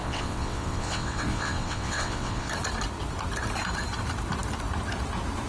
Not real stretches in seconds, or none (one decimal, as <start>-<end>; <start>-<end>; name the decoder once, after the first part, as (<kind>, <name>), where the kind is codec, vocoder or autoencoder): 0.0-2.5 (vocoder, WaveNeXt)